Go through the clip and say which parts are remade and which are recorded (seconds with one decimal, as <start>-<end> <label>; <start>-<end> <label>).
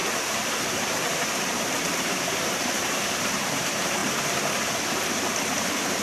0.0-4.0 remade; 4.0-5.6 recorded; 5.6-6.0 remade